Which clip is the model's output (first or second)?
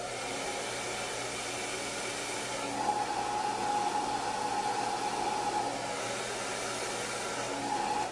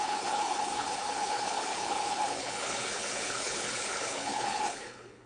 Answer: second